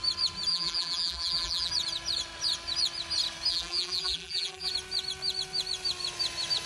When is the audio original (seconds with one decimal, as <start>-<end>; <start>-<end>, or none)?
0.0-0.5; 1.7-3.5; 4.7-6.7